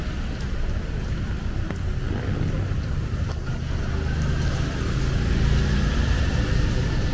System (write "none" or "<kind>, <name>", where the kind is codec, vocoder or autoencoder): none